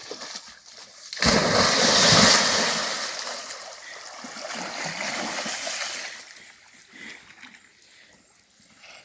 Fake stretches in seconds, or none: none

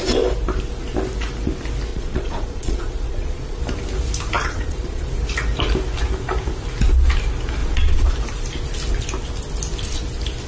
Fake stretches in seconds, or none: 1.9-3.6; 4.4-5.1; 7.6-8.1

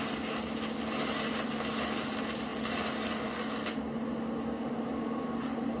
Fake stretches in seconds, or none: none

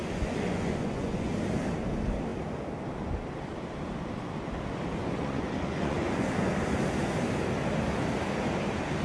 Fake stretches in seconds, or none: 0.0-1.3; 5.0-6.5